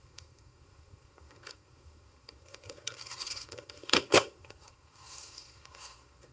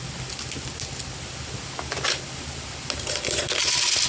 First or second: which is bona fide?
second